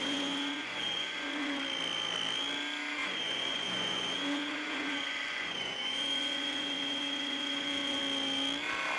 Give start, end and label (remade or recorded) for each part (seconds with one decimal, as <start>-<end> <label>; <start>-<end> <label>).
0.0-1.6 remade; 1.6-3.0 recorded; 3.0-8.0 remade; 8.0-9.0 recorded